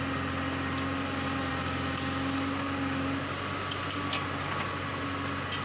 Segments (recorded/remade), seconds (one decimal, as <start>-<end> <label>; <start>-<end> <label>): 0.0-5.6 recorded